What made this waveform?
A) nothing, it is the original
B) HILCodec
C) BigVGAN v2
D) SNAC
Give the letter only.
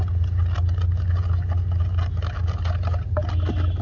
A